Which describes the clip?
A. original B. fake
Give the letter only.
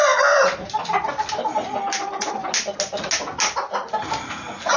A